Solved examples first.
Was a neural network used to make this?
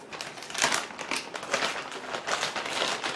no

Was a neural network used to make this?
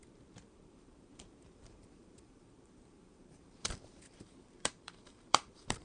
yes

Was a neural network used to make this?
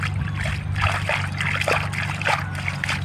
no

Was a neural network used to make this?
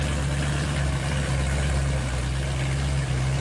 no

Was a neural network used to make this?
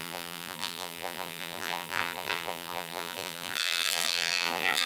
yes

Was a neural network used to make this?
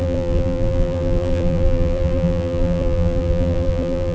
yes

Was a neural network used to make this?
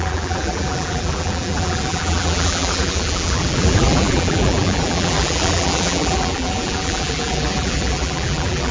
yes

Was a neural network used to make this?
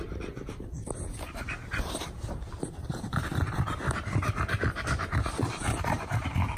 yes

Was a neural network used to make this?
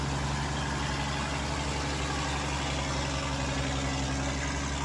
no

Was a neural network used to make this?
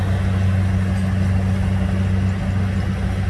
no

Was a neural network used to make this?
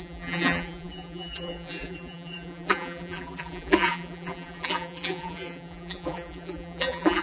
yes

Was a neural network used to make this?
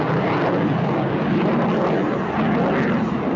no